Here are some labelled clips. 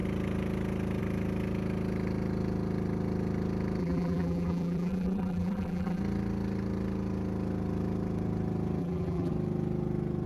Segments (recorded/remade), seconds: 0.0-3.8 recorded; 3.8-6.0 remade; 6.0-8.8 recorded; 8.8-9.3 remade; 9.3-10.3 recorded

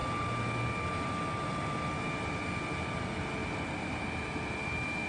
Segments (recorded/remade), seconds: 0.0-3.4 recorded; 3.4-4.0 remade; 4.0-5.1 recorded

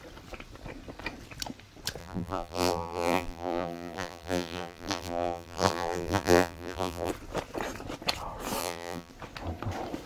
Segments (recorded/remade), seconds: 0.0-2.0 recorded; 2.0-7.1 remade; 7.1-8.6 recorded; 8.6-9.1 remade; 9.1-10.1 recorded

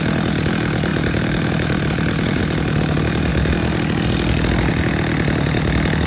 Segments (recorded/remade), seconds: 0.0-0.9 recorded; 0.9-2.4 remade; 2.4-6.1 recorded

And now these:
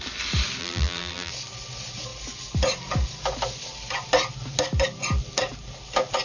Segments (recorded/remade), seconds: 0.0-0.6 recorded; 0.6-1.3 remade; 1.3-6.2 recorded

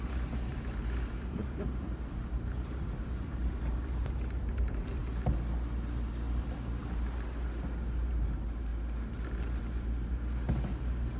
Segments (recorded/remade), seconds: 0.0-5.1 remade; 5.1-8.1 recorded; 8.1-8.7 remade; 8.7-9.6 recorded; 9.6-11.2 remade

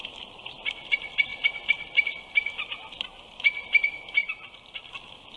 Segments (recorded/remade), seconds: 0.0-1.3 recorded; 1.3-2.2 remade; 2.2-5.4 recorded

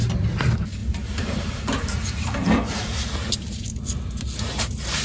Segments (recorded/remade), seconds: 0.0-0.8 recorded; 0.8-2.6 remade; 2.6-5.0 recorded